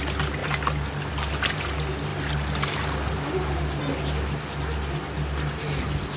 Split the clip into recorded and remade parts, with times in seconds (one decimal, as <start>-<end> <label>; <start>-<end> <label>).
0.0-6.2 recorded